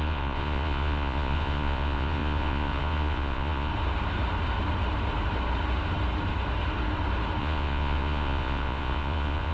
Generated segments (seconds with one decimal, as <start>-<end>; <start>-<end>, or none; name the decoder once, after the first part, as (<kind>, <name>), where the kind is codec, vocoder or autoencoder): 0.0-3.7 (vocoder, Vocos); 7.4-9.5